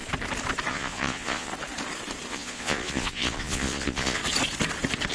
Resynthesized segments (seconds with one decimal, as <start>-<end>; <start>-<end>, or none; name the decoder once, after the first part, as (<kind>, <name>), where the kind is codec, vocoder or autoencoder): 0.7-1.5 (vocoder, Vocos); 2.3-4.2